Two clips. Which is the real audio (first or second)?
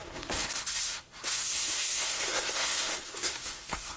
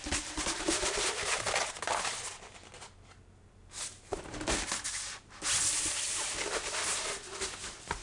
second